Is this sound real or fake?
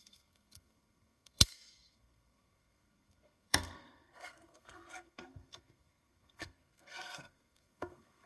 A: fake